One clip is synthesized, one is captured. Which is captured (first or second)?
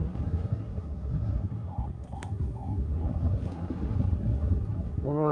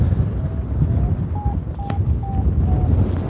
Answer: second